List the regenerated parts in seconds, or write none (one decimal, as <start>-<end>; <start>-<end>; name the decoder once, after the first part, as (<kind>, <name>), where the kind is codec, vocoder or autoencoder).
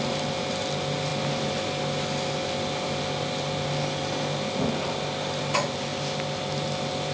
none